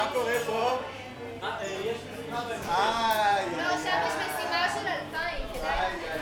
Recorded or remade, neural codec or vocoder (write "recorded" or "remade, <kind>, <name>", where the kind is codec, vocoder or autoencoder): recorded